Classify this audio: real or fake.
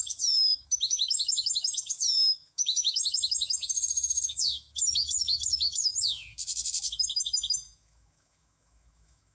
fake